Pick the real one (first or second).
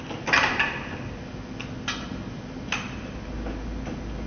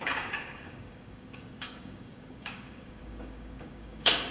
first